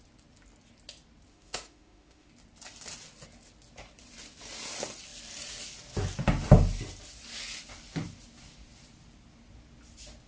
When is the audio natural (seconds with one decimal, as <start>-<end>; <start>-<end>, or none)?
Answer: 0.0-1.3; 2.3-10.3